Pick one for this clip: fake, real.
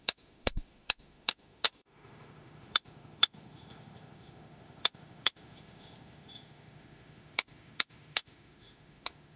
fake